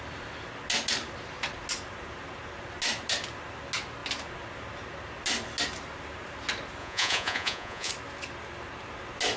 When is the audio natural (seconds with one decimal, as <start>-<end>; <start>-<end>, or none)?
0.0-6.8; 7.9-9.4